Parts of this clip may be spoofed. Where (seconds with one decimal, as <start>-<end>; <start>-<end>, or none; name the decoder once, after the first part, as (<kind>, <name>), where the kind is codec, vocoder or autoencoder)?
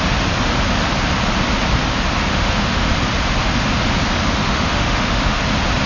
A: 2.3-2.9 (autoencoder, DAC-VAE); 4.4-5.4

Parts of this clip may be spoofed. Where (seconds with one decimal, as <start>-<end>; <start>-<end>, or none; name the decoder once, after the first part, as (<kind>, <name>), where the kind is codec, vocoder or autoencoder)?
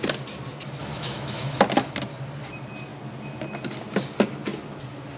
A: 0.8-1.6 (autoencoder, DAC-VAE)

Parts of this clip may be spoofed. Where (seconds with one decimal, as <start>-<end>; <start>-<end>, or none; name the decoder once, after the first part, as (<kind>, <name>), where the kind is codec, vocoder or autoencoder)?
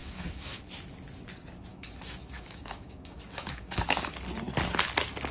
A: 0.0-0.6 (autoencoder, DAC-VAE); 1.7-4.1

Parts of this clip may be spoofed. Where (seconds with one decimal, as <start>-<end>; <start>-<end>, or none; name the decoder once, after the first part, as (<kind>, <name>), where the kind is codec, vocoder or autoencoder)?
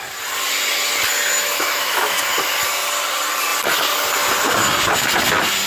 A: 1.4-2.2 (autoencoder, DAC-VAE)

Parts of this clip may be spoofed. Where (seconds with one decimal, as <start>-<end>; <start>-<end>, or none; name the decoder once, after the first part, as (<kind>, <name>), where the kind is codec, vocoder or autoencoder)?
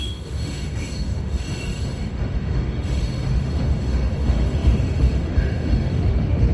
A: 0.0-6.5 (autoencoder, DAC-VAE)